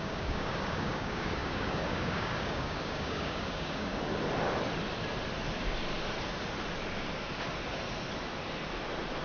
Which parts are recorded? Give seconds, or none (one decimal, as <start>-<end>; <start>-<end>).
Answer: 3.9-9.2